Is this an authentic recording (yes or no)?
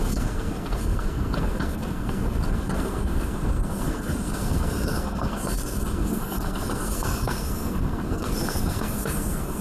no